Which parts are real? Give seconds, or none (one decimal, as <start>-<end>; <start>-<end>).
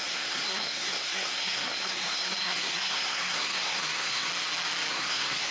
4.3-4.9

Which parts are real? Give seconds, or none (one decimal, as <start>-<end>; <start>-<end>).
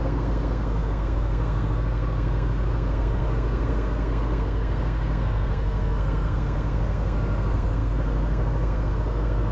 none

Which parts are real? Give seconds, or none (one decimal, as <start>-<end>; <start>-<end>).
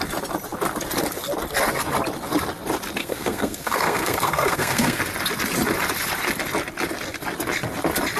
0.0-3.0; 5.0-8.2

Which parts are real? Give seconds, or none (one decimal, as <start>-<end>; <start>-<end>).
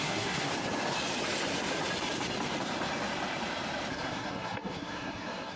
0.5-3.9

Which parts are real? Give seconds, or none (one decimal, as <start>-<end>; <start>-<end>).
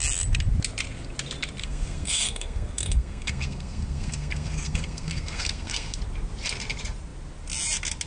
0.0-1.6; 6.0-8.1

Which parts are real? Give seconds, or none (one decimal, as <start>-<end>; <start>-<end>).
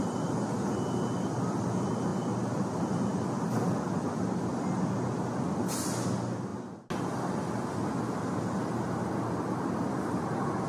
0.0-10.7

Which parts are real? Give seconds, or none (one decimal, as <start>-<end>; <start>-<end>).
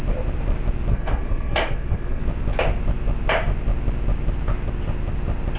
0.0-0.9; 2.2-5.6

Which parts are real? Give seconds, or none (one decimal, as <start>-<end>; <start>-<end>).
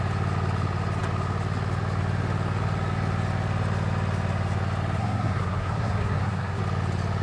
0.0-5.0; 6.6-7.2